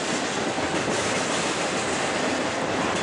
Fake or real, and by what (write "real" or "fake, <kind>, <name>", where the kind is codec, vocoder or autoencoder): real